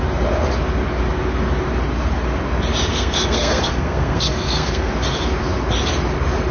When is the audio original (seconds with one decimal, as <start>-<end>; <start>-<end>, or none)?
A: 0.0-2.9; 4.9-6.5